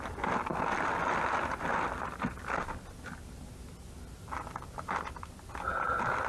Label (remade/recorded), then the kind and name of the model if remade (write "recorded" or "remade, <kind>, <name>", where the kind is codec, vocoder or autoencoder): recorded